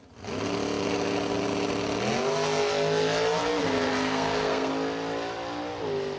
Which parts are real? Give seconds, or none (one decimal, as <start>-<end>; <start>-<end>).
0.0-3.6; 4.7-6.2